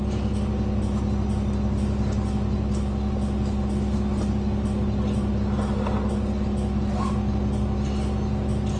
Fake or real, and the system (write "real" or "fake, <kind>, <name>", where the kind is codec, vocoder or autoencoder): real